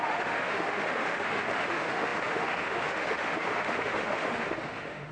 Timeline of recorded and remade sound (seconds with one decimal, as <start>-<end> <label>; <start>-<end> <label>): 0.0-5.1 remade